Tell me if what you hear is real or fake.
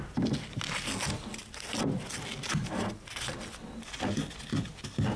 real